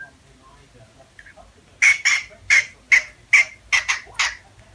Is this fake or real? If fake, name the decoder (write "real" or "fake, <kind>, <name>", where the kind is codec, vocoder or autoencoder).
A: real